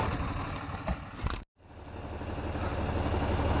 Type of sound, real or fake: real